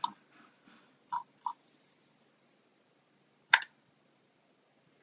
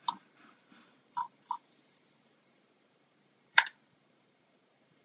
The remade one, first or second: second